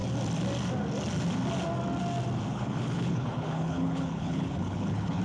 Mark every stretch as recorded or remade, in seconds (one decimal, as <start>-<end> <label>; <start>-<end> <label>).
0.0-2.5 recorded; 2.5-5.2 remade